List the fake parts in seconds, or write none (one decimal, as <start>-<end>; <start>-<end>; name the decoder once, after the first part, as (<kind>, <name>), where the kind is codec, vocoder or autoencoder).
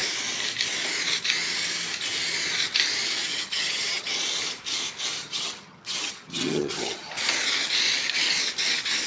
3.3-4.1 (vocoder, HiFi-GAN); 5.2-7.1